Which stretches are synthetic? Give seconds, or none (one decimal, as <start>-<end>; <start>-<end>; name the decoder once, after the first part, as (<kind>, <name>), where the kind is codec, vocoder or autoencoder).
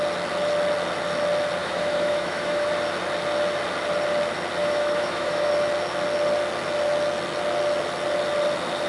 1.6-2.7 (autoencoder, DAC-VAE); 4.6-5.5